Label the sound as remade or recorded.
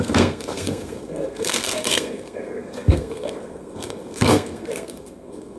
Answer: remade